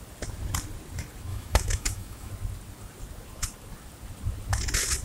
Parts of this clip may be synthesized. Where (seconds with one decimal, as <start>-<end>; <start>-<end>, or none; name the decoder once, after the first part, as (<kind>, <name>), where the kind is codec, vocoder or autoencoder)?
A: 1.3-2.3 (autoencoder, DAC-VAE)